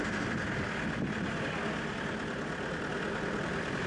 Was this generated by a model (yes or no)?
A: no